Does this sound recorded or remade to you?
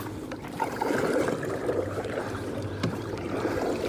remade